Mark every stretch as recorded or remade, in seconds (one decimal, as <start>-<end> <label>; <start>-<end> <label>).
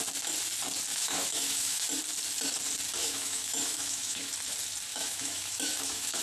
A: 0.0-0.9 recorded; 0.9-1.8 remade; 1.8-3.0 recorded; 3.0-4.3 remade; 4.3-4.9 recorded; 4.9-6.2 remade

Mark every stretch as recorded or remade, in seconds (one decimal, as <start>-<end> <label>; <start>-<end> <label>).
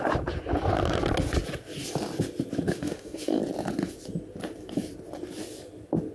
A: 0.0-2.8 recorded; 2.8-3.4 remade; 3.4-6.1 recorded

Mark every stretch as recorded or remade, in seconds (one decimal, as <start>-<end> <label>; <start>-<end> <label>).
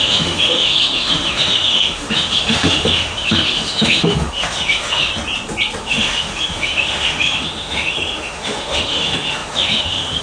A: 0.0-5.1 remade; 5.1-5.8 recorded; 5.8-10.2 remade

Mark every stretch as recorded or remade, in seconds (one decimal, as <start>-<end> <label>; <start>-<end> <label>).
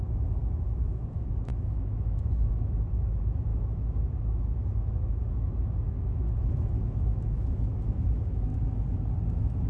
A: 0.0-8.5 remade; 8.5-9.7 recorded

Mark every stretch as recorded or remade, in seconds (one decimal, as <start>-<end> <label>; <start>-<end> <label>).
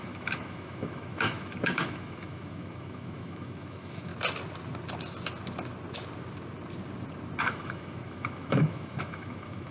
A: 0.0-4.1 remade; 4.1-7.4 recorded; 7.4-9.7 remade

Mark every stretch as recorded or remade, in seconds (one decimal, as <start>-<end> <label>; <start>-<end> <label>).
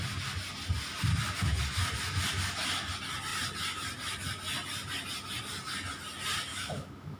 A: 0.0-6.5 recorded; 6.5-7.2 remade